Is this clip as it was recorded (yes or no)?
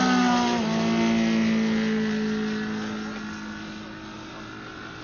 yes